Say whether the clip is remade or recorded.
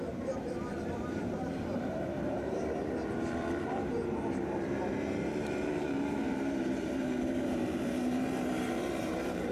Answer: remade